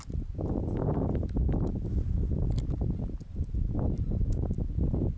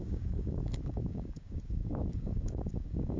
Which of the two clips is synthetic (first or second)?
second